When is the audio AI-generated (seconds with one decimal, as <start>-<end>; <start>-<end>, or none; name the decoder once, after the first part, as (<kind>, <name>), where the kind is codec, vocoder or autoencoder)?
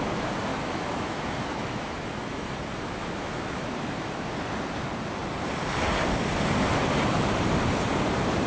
0.5-4.4 (autoencoder, DAC-VAE)